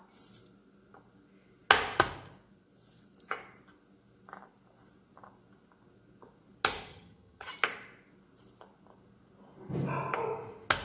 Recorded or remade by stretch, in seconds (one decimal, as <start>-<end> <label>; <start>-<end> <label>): 0.0-6.9 recorded; 6.9-7.5 remade; 7.5-10.8 recorded

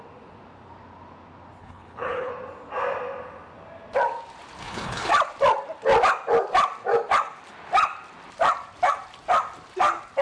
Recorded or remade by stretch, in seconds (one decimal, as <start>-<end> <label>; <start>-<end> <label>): 0.0-1.6 recorded; 1.6-2.3 remade; 2.3-4.6 recorded; 4.6-5.1 remade; 5.1-10.2 recorded

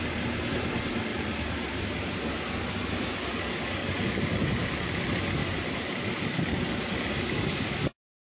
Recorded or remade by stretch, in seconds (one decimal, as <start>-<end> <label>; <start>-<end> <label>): 0.0-1.1 recorded; 1.1-2.5 remade; 2.5-3.8 recorded; 3.8-5.0 remade; 5.0-5.4 recorded; 5.4-6.1 remade; 6.1-8.2 recorded

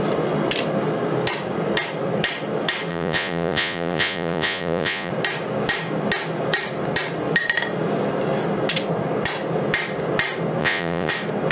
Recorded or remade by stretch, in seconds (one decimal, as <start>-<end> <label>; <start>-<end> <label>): 0.0-2.9 recorded; 2.9-5.1 remade; 5.1-10.6 recorded; 10.6-11.1 remade; 11.1-11.5 recorded

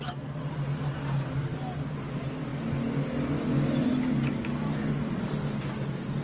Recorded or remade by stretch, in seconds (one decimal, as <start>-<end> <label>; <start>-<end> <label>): 0.0-6.2 recorded

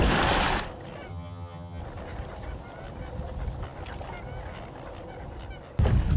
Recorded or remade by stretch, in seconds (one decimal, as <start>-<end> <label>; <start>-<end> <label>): 0.0-1.1 recorded; 1.1-1.8 remade; 1.8-6.2 recorded

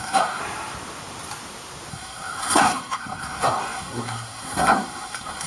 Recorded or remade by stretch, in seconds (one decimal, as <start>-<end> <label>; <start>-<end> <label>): 0.0-0.4 remade; 0.4-1.9 recorded; 1.9-5.5 remade

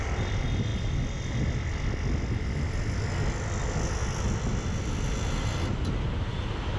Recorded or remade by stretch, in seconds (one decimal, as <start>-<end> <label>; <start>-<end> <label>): 0.0-6.8 recorded